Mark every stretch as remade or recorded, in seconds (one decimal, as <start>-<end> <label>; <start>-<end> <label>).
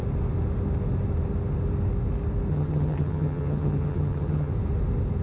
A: 0.0-2.5 recorded; 2.5-4.5 remade; 4.5-5.2 recorded